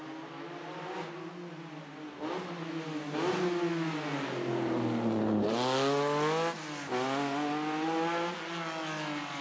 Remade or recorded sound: recorded